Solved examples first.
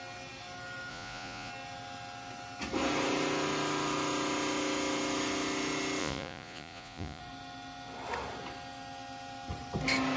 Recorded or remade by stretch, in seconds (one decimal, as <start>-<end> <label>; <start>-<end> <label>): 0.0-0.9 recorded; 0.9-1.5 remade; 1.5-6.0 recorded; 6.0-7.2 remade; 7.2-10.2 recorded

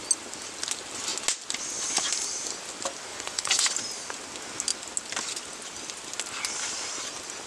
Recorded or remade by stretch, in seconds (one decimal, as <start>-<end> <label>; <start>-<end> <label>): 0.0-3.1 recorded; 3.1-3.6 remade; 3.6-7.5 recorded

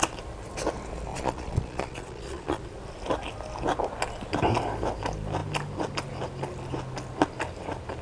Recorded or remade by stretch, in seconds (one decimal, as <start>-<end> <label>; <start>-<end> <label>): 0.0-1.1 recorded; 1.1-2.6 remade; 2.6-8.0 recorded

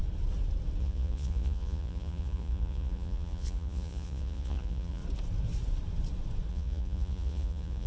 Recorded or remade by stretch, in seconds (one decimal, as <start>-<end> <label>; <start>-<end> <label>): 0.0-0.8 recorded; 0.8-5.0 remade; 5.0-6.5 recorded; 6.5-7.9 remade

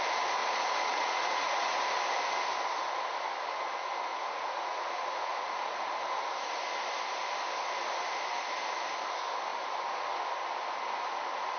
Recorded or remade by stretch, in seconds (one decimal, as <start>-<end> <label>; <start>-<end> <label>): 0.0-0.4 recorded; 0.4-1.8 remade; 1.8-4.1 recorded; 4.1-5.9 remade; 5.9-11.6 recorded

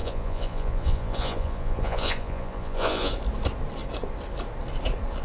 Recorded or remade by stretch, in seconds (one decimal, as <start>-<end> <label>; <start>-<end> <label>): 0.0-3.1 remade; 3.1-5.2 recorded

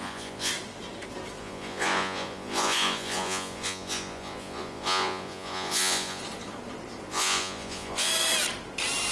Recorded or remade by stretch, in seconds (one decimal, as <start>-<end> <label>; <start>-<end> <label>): 0.0-0.5 remade; 0.5-1.4 recorded; 1.4-6.2 remade; 6.2-7.1 recorded; 7.1-8.1 remade; 8.1-9.1 recorded